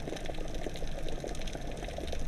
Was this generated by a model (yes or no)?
no